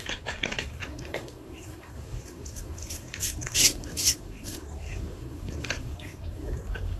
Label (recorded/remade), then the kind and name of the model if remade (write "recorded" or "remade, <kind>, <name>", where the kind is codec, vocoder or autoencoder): remade, codec, SNAC